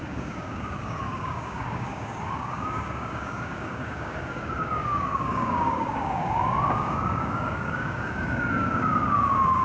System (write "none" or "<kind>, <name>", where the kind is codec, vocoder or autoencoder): codec, DAC